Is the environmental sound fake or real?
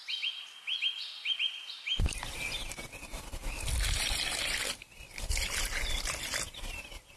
real